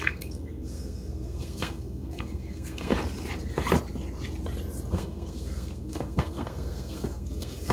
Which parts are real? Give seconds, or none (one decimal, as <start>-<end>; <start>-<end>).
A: 2.9-4.9